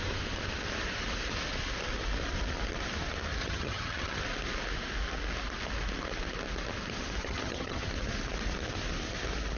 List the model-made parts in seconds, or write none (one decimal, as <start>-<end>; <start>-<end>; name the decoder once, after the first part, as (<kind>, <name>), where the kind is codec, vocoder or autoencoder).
3.4-4.2 (vocoder, HiFi-GAN); 7.2-7.9